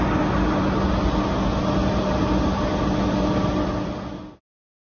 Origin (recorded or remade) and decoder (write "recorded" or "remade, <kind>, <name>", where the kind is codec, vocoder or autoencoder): recorded